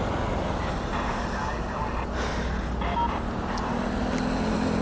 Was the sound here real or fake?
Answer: real